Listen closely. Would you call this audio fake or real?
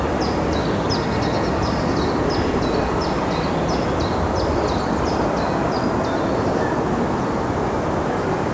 real